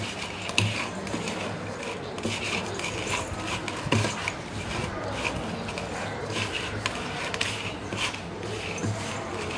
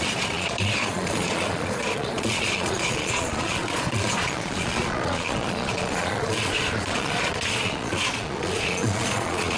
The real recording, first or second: first